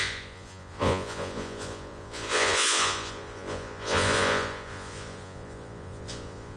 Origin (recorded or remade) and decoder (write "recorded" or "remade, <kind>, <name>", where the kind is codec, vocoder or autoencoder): remade, vocoder, Vocos